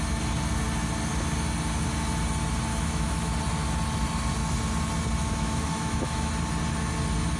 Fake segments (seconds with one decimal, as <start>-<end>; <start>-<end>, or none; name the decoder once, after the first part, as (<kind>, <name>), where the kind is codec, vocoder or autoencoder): 2.7-3.3 (autoencoder, DAC-VAE); 5.2-6.3